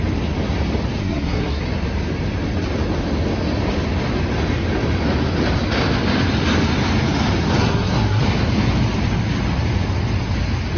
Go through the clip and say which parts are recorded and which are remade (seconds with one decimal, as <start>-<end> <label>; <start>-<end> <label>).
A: 0.0-1.0 recorded; 1.0-1.6 remade; 1.6-7.6 recorded; 7.6-8.2 remade; 8.2-10.8 recorded